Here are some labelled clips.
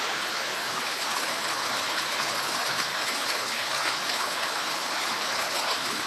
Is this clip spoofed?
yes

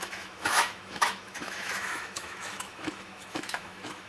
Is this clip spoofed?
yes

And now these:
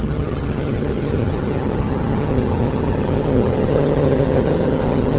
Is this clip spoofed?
yes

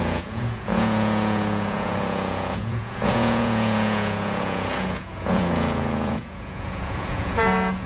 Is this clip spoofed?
yes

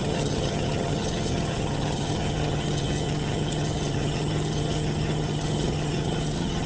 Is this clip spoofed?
yes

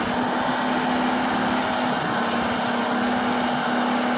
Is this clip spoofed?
no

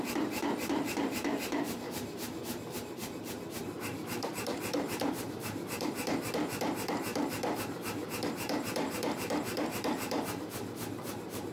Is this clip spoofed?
yes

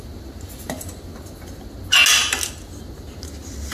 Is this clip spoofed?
no